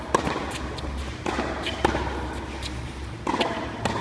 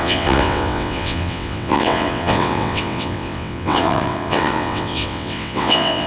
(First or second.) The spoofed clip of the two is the second